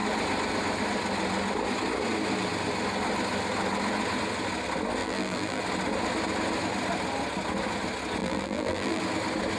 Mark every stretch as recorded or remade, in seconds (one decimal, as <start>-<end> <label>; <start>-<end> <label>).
0.0-5.0 recorded; 5.0-5.6 remade; 5.6-8.2 recorded; 8.2-9.0 remade; 9.0-9.6 recorded